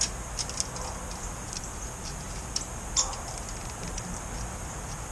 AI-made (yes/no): no